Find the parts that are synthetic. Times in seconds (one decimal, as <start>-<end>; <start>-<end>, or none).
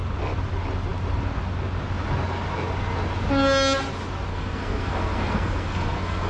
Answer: 4.3-6.3